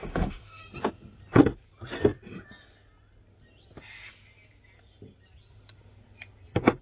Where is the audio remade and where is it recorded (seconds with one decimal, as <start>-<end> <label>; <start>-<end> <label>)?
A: 0.0-0.6 remade; 0.6-6.8 recorded